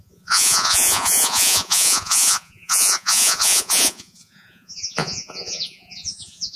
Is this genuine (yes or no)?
no